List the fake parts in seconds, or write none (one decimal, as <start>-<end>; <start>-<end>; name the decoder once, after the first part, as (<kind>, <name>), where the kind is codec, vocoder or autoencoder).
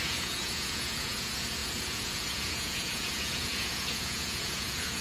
0.0-5.0 (vocoder, Vocos)